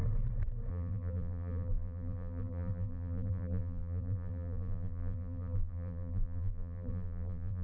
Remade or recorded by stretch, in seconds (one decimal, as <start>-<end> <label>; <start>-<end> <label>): 0.0-0.7 recorded; 0.7-7.6 remade